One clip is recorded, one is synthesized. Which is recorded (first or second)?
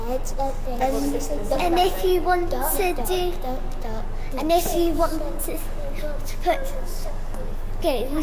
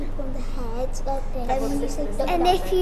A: second